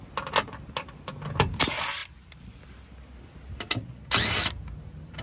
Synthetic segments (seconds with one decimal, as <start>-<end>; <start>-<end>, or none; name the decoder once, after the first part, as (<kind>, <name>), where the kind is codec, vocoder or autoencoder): none